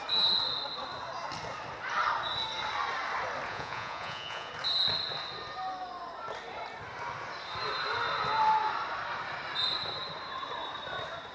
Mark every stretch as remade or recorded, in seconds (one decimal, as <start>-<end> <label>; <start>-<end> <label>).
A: 0.0-3.5 recorded; 3.5-4.5 remade; 4.5-11.3 recorded